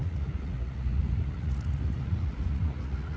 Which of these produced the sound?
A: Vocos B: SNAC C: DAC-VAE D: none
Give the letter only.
A